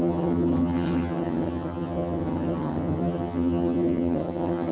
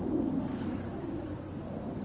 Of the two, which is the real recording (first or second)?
second